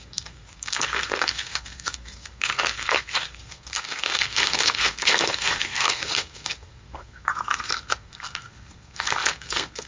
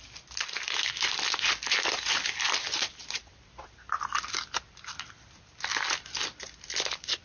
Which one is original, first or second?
second